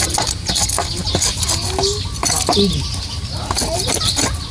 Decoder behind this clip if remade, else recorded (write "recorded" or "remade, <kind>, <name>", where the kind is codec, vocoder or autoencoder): recorded